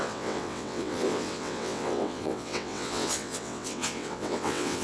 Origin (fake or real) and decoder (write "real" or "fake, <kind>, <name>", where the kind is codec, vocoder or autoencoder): fake, vocoder, WaveNeXt